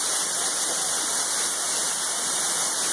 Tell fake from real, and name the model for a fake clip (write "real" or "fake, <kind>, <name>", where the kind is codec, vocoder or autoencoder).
real